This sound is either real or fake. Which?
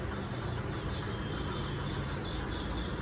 real